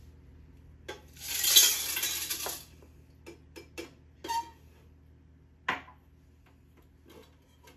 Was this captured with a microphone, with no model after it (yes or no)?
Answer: yes